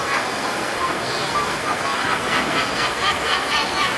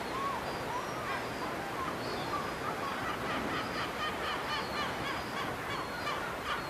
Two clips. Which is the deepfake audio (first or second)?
first